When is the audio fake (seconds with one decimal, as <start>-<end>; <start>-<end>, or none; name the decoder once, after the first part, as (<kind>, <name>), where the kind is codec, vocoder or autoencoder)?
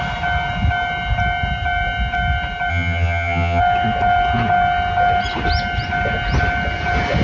2.7-3.6 (vocoder, HiFi-GAN)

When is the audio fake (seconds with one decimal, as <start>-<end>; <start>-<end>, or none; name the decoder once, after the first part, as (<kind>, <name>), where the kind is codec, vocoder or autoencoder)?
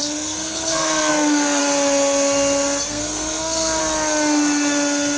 0.0-1.6 (codec, SNAC); 2.9-3.8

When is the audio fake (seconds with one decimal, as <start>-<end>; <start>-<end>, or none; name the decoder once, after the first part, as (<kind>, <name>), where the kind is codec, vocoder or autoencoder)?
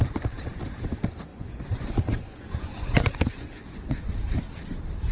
1.3-4.0 (vocoder, Vocos)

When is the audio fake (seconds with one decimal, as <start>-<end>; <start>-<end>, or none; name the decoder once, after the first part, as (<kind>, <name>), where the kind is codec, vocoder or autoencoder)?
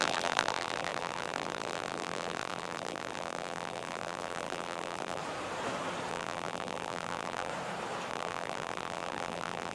0.0-5.2 (vocoder, BigVGAN v2); 6.1-7.5; 8.1-9.7